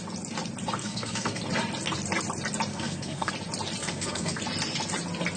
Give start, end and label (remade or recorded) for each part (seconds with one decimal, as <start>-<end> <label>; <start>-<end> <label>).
0.0-0.8 recorded; 0.8-1.4 remade; 1.4-2.7 recorded; 2.7-3.3 remade; 3.3-3.8 recorded; 3.8-4.4 remade; 4.4-5.4 recorded